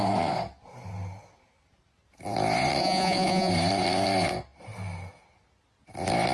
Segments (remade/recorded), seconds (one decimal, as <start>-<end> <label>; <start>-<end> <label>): 0.0-2.8 recorded; 2.8-3.5 remade; 3.5-6.3 recorded